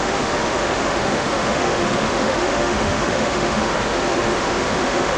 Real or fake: fake